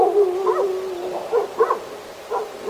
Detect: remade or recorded recorded